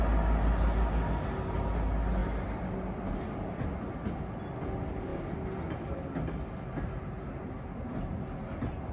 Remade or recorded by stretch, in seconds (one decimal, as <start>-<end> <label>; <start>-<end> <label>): 0.0-8.9 recorded